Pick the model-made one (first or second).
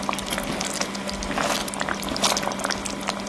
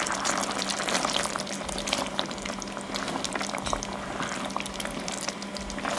second